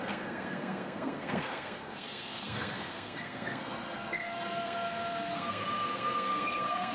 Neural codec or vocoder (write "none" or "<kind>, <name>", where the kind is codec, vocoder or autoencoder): codec, SNAC